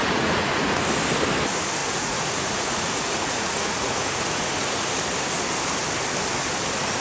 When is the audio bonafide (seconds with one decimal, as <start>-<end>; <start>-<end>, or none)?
0.8-1.8; 4.9-7.0